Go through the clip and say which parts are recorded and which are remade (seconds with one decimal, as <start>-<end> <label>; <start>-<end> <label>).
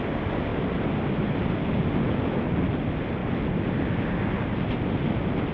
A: 0.0-5.5 recorded